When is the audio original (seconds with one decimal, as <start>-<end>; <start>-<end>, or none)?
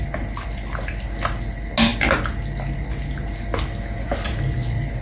0.0-5.0